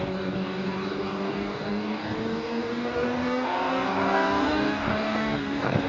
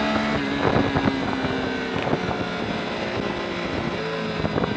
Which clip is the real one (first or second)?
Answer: second